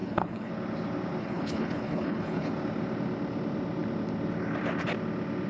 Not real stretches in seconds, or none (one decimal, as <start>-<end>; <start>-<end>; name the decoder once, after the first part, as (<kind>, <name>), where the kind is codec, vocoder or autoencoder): 0.0-0.5 (codec, HILCodec); 1.2-2.5